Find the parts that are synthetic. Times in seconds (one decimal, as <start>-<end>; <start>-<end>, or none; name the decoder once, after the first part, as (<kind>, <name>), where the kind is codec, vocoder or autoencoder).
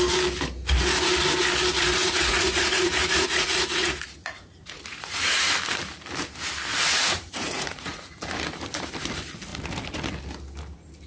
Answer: 2.0-5.5 (vocoder, Vocos); 6.7-8.2